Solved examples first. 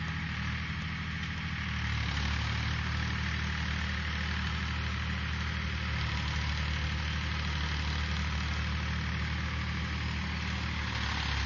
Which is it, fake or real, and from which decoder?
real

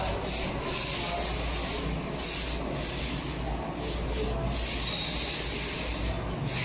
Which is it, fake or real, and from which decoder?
real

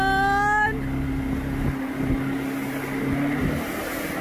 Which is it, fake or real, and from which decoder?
real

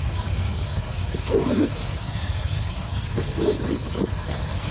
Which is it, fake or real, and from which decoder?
fake, codec, SNAC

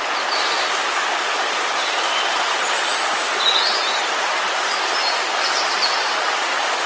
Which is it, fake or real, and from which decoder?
real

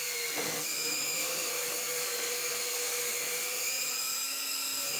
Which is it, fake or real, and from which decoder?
fake, codec, SNAC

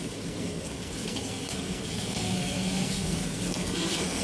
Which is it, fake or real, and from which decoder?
fake, codec, SNAC